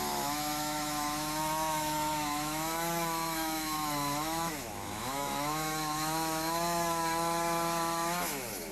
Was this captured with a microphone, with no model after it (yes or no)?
no